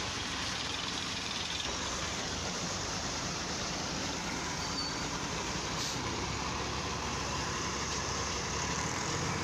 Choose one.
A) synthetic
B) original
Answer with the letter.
A